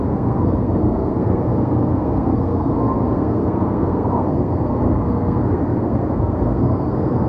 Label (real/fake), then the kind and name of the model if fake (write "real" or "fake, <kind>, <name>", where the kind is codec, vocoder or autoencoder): fake, codec, SNAC